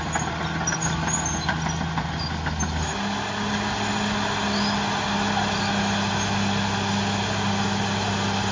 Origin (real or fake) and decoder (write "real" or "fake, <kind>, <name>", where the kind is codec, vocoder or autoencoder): real